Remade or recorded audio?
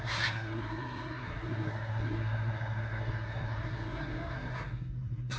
remade